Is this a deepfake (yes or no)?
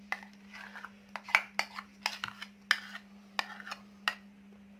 no